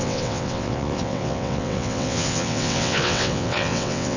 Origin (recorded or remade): remade